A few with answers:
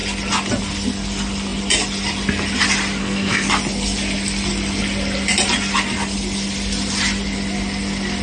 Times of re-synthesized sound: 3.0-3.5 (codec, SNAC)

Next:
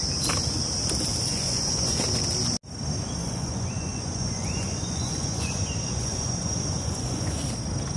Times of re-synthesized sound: 1.3-2.0 (vocoder, Vocos); 3.2-7.4

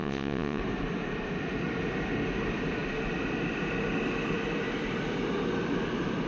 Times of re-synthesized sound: 0.0-0.6 (vocoder, WaveNeXt)

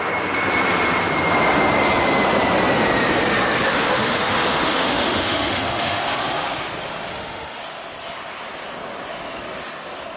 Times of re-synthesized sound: 3.7-6.0 (autoencoder, DAC-VAE); 7.1-7.6

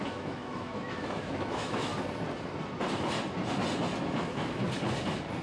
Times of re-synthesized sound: 0.0-1.9 (autoencoder, DAC-VAE); 4.0-4.6